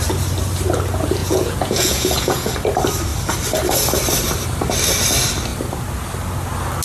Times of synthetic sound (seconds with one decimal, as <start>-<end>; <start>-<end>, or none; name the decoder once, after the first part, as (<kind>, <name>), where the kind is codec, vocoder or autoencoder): 1.2-2.5 (vocoder, Vocos)